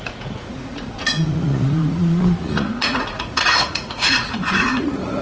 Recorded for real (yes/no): no